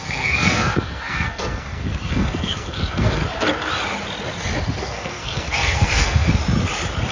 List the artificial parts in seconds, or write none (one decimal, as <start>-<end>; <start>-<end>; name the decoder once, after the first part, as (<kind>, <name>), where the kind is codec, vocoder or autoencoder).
0.0-3.2 (codec, SNAC); 4.8-6.4